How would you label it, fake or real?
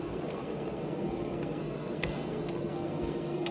fake